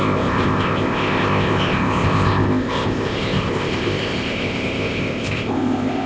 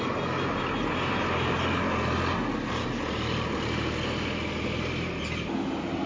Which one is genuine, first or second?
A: second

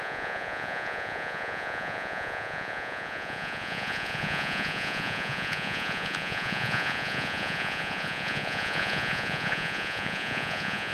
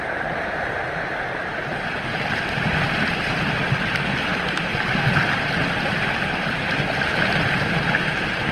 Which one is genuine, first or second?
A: second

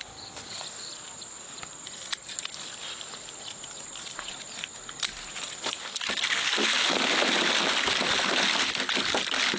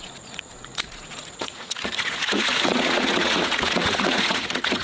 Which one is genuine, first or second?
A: first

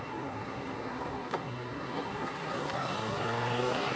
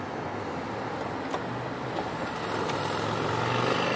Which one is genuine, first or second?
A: second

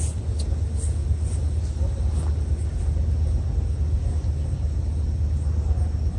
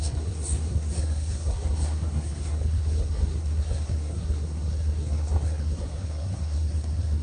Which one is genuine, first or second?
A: first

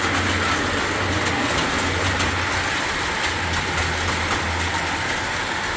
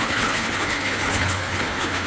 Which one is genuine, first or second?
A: first